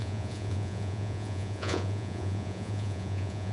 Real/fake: fake